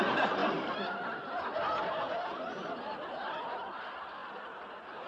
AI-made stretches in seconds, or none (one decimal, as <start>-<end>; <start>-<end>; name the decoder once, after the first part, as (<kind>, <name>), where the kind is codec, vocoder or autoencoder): none